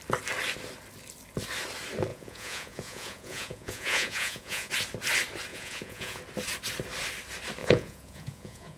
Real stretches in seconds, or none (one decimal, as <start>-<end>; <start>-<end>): 0.0-2.1; 4.7-5.5; 6.2-7.6

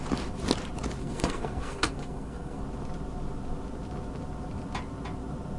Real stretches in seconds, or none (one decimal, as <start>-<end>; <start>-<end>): 0.0-1.0; 2.6-5.6